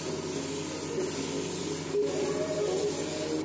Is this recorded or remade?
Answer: recorded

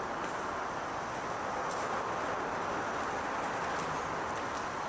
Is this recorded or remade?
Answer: recorded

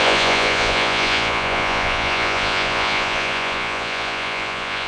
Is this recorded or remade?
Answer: remade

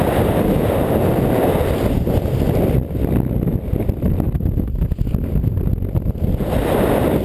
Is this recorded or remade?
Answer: recorded